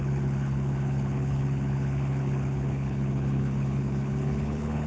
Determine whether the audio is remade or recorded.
remade